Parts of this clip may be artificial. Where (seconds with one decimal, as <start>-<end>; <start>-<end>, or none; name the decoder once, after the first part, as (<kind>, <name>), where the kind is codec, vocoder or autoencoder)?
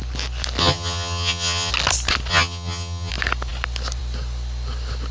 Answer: 0.6-1.7 (vocoder, HiFi-GAN); 2.3-3.1